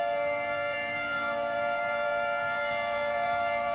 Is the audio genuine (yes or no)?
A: no